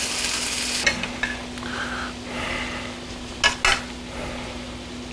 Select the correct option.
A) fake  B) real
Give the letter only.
B